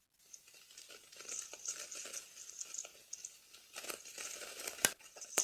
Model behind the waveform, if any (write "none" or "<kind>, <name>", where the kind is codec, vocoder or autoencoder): none